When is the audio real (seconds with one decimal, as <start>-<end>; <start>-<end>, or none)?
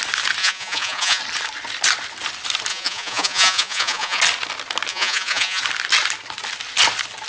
0.0-0.4; 1.2-2.7; 4.2-4.9; 5.6-7.3